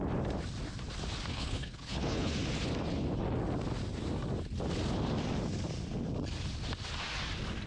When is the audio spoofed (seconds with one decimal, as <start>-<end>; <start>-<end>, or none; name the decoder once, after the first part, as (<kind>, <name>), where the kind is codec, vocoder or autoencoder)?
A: 1.3-2.3 (codec, HILCodec)